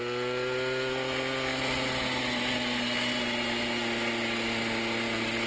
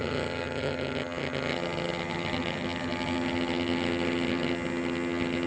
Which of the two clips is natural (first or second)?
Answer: first